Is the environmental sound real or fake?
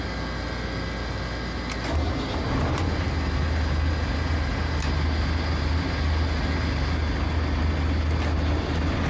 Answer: real